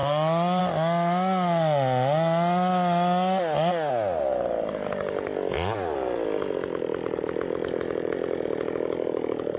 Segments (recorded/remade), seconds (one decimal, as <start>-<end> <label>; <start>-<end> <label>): 0.0-9.6 recorded